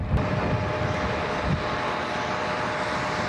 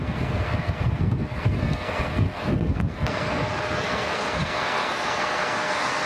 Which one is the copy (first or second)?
second